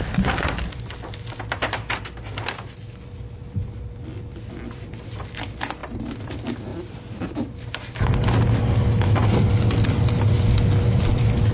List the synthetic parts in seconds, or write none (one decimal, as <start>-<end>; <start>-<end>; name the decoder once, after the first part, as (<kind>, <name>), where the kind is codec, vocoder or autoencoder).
5.8-6.3 (vocoder, BigVGAN v2); 6.7-7.3; 9.2-10.0